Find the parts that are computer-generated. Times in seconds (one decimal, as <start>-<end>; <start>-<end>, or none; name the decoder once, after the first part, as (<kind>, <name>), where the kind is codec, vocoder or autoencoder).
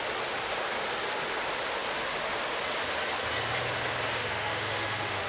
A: 4.2-5.3 (autoencoder, DAC-VAE)